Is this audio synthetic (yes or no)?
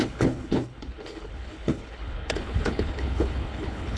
yes